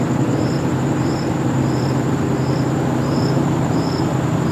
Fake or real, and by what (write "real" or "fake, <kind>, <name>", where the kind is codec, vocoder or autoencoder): fake, vocoder, BigVGAN v2